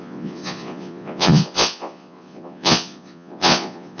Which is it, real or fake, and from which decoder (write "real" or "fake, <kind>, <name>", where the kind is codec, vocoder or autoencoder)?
fake, vocoder, Vocos